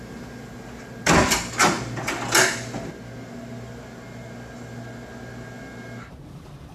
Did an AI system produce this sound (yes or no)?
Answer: no